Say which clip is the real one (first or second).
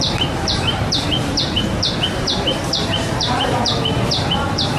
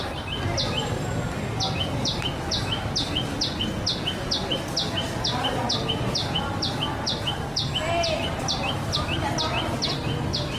second